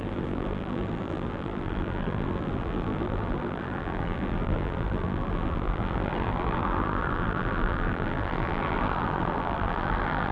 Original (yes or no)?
no